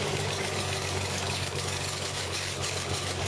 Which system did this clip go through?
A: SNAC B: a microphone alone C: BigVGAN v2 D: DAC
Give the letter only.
D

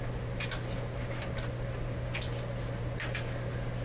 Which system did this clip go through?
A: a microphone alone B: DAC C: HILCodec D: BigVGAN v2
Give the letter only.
A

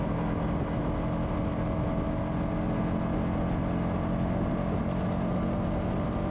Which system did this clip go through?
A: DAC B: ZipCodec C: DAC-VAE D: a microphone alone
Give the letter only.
D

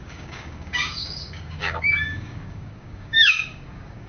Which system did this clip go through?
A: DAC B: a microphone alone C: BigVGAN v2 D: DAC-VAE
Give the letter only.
A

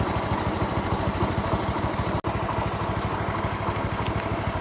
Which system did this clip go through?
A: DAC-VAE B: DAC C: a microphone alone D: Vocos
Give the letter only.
C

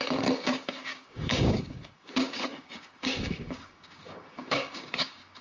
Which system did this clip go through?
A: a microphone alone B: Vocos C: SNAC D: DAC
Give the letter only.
D